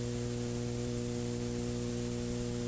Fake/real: fake